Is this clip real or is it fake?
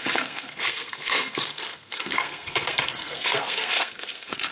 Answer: fake